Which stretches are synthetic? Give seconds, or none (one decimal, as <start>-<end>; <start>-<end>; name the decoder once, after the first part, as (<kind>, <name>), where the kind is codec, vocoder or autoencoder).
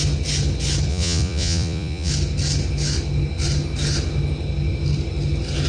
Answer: 0.9-2.1 (vocoder, Vocos)